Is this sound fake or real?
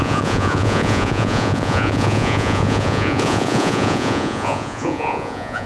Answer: fake